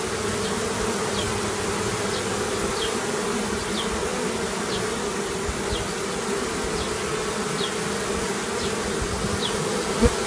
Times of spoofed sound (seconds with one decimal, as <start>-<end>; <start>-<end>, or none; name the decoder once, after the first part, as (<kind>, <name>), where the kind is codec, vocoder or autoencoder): none